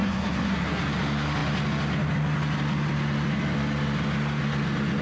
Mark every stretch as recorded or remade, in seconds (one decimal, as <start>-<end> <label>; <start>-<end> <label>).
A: 0.0-0.8 remade; 0.8-5.0 recorded